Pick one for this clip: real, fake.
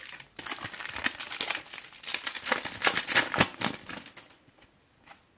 real